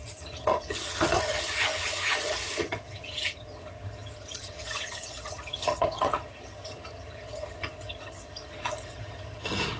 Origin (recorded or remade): remade